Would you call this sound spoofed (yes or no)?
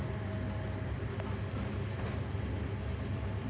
no